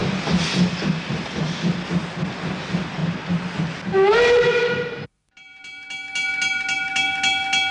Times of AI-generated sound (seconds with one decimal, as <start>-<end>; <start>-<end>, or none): none